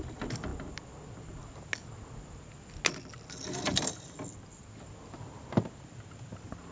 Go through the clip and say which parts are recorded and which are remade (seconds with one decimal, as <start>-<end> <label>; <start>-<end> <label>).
0.0-6.7 recorded